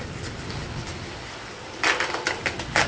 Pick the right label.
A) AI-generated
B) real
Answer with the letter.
B